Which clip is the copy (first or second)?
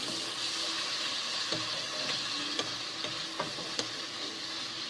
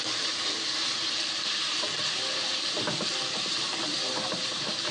second